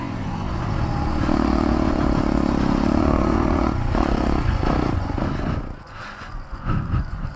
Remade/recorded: remade